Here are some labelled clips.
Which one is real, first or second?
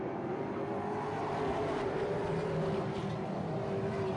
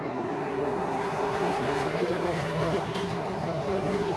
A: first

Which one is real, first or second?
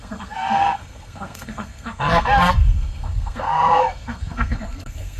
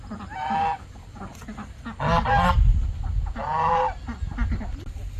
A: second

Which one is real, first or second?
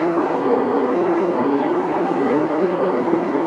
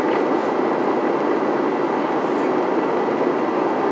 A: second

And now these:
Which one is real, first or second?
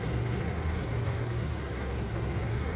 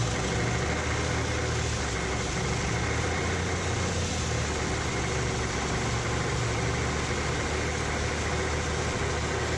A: second